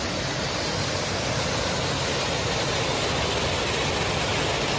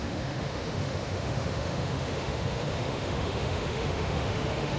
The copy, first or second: second